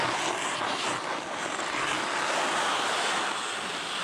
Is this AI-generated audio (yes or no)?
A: no